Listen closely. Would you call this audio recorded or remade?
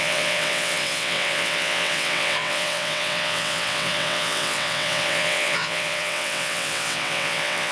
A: remade